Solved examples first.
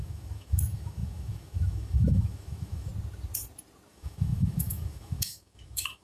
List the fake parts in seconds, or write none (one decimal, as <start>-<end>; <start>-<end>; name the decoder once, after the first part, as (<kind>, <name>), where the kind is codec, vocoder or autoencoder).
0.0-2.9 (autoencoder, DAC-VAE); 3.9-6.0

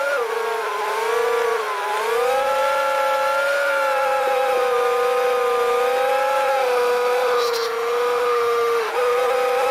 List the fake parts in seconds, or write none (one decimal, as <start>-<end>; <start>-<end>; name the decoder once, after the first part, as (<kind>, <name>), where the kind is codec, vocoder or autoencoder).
6.5-8.9 (autoencoder, DAC-VAE)

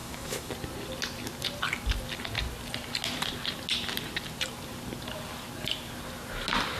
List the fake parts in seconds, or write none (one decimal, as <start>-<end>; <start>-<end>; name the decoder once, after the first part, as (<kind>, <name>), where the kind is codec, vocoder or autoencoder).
0.0-0.5 (autoencoder, DAC-VAE)

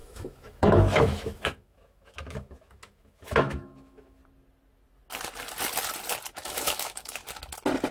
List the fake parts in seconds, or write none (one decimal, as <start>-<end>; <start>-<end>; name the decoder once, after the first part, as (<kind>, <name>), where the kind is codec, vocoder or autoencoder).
0.0-4.2 (autoencoder, DAC-VAE); 6.3-7.2